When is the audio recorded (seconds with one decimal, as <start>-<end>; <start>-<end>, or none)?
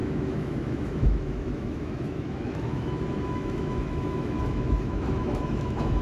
none